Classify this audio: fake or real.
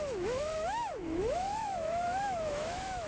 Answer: fake